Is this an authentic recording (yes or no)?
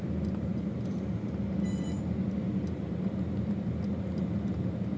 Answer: yes